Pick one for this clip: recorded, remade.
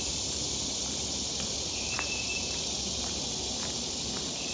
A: remade